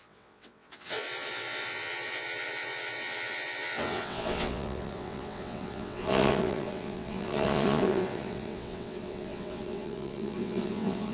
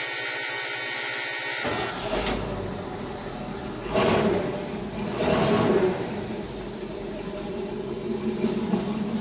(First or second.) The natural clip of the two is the second